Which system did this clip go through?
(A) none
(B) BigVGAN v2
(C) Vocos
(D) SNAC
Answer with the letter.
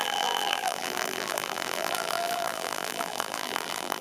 B